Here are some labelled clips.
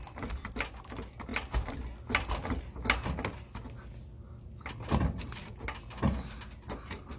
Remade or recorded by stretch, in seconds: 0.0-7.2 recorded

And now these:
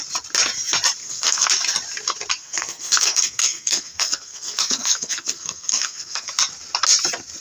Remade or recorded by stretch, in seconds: 0.0-1.0 recorded; 1.0-1.5 remade; 1.5-2.4 recorded; 2.4-6.3 remade; 6.3-7.4 recorded